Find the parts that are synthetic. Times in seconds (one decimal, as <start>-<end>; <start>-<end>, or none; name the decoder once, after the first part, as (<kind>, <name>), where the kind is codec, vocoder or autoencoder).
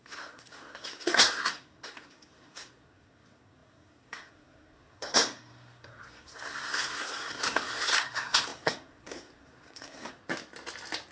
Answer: 0.0-10.2 (codec, SNAC)